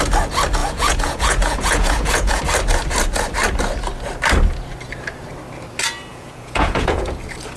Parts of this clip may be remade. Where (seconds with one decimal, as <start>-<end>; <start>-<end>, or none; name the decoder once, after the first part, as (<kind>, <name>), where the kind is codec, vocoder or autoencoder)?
0.6-2.4 (vocoder, Vocos); 6.1-7.1